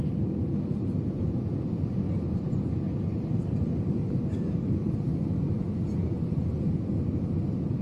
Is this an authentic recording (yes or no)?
yes